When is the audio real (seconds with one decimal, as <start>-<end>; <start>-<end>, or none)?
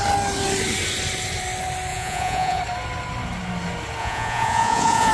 0.0-1.9; 2.6-4.0